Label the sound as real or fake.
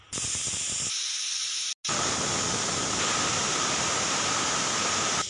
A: real